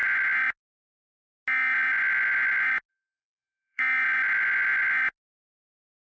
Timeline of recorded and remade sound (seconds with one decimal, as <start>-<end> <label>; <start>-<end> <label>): 0.0-2.9 recorded; 2.9-3.8 remade; 3.8-6.1 recorded